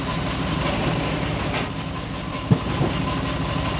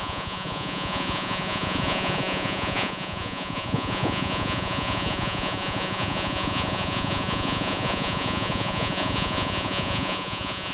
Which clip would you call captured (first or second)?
first